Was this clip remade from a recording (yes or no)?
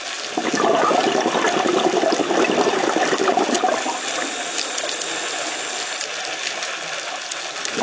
no